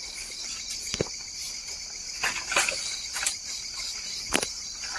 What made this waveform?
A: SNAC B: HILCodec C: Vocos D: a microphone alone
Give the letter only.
D